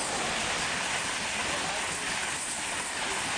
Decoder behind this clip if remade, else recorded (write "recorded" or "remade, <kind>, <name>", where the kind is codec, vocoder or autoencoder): recorded